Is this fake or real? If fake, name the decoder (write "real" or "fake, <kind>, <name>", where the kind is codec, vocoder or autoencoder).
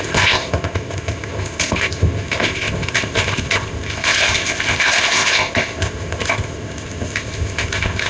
fake, codec, ZipCodec